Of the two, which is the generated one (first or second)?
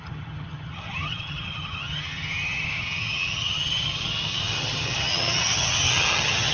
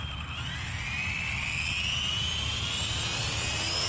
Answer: first